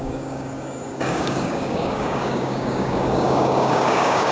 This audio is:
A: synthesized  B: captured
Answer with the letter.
A